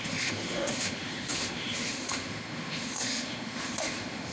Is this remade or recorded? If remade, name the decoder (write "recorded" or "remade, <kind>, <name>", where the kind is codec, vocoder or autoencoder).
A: remade, autoencoder, DAC-VAE